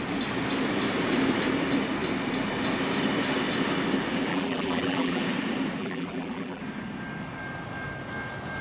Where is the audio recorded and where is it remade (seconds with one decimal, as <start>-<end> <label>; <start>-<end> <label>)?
0.0-4.3 recorded; 4.3-5.2 remade; 5.2-5.8 recorded; 5.8-6.6 remade; 6.6-8.6 recorded